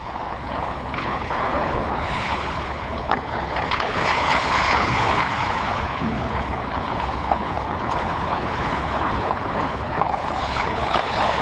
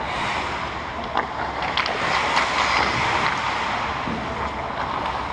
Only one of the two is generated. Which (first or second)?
first